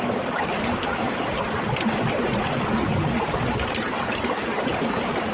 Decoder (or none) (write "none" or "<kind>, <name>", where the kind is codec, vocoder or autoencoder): none